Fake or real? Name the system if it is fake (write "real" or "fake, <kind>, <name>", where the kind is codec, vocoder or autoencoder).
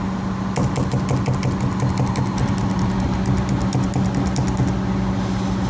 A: real